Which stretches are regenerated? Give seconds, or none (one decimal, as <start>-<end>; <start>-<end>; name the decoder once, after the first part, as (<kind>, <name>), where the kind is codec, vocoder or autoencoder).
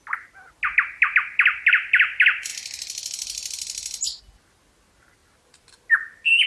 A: none